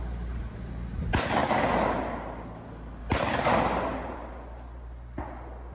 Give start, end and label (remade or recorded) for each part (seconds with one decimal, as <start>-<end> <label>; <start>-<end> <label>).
0.0-5.7 recorded